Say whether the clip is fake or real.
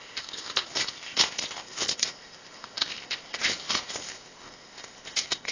fake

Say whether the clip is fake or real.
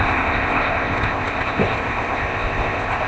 fake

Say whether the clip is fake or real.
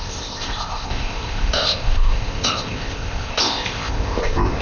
fake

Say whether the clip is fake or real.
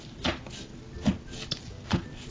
real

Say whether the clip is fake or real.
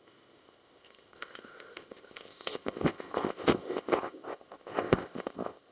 fake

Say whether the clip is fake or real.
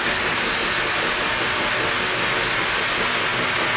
real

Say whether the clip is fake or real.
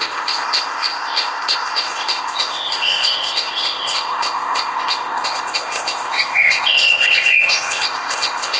fake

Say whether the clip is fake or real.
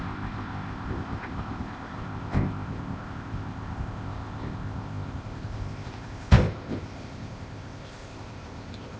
fake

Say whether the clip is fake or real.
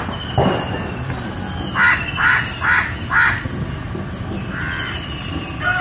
real